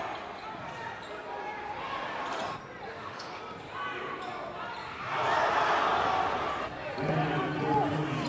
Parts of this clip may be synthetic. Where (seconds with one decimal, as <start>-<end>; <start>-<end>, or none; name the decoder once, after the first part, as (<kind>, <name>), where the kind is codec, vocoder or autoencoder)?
2.9-3.4 (autoencoder, DAC-VAE)